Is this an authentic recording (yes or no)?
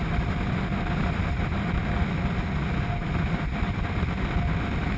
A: yes